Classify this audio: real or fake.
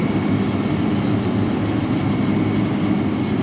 real